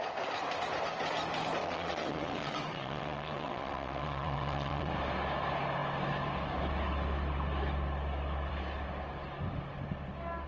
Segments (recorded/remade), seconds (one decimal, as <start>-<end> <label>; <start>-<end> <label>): 0.0-1.6 recorded; 1.6-4.9 remade; 4.9-10.5 recorded